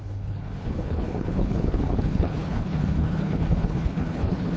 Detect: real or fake fake